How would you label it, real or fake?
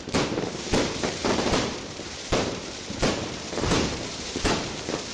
fake